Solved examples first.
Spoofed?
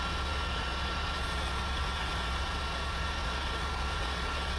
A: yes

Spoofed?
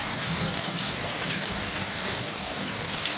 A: yes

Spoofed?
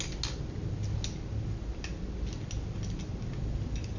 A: no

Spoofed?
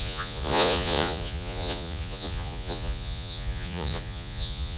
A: yes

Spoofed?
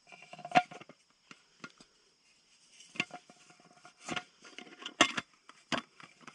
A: no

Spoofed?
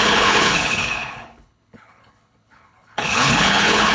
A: yes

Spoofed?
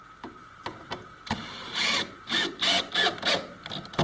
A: no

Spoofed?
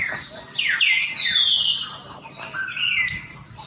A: no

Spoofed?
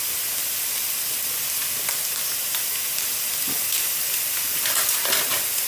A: no